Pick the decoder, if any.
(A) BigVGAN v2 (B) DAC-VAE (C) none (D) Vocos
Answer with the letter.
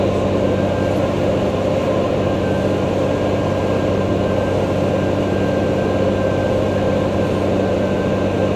C